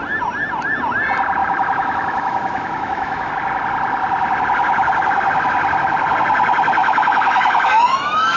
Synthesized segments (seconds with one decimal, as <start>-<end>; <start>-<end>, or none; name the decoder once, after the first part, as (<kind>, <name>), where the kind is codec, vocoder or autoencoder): 1.4-3.3 (autoencoder, DAC-VAE); 6.8-8.4